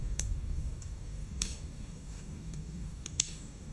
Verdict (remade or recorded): remade